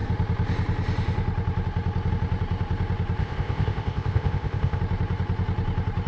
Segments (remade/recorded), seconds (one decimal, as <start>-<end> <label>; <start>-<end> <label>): 0.0-3.2 recorded; 3.2-4.8 remade; 4.8-6.1 recorded